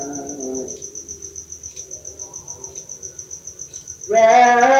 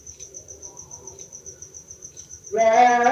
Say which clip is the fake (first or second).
second